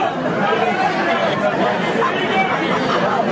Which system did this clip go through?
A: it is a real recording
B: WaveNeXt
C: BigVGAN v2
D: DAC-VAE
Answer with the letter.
A